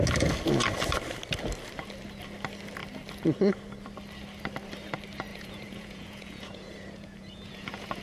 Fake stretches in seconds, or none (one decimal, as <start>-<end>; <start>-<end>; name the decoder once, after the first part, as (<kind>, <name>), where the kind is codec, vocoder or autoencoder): 5.3-8.0 (vocoder, Vocos)